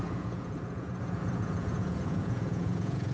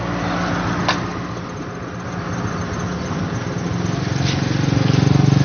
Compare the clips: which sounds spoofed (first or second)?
first